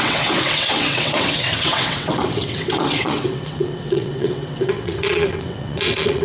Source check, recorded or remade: remade